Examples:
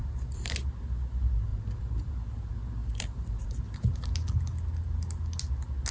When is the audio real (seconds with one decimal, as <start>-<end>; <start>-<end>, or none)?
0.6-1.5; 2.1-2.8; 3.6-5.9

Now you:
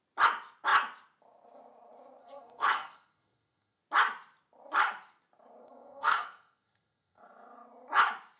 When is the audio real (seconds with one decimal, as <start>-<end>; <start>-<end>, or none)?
0.0-2.2; 3.8-5.6; 7.2-8.4

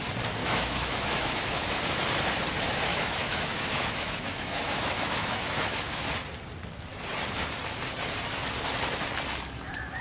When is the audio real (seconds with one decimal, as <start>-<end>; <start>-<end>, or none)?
0.0-0.4; 1.8-2.9; 6.1-10.0

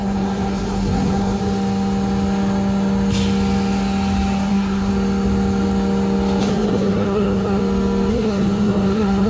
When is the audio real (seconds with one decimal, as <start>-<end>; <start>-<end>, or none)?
1.4-4.5; 4.9-6.4; 7.6-8.1

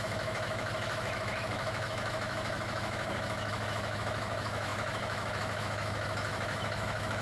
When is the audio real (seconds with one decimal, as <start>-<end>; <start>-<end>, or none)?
none

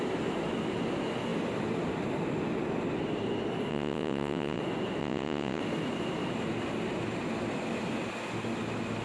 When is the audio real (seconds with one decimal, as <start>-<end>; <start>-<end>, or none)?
0.0-3.7; 4.6-5.0; 5.6-9.0

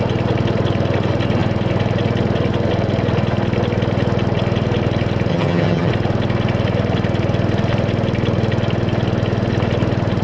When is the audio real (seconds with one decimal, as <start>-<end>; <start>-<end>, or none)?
0.0-5.3; 5.9-10.2

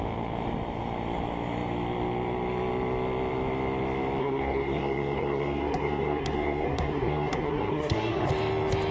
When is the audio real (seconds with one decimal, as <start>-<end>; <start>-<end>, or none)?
0.0-4.2; 8.3-8.9